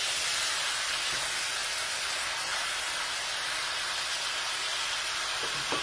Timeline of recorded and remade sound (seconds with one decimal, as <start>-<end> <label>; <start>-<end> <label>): 0.0-5.8 recorded